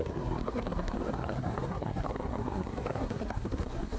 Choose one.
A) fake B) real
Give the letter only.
A